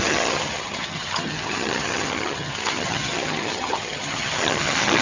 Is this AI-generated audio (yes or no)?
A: yes